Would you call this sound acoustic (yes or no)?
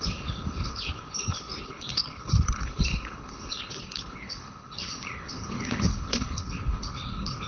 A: no